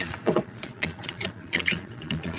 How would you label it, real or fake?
fake